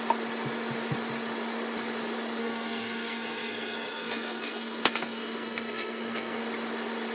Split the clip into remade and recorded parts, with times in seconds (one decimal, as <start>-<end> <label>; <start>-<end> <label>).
0.0-2.4 recorded; 2.4-6.4 remade; 6.4-7.1 recorded